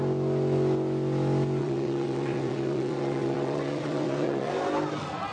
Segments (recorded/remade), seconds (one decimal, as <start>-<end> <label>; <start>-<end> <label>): 0.0-1.6 recorded; 1.6-4.5 remade; 4.5-5.3 recorded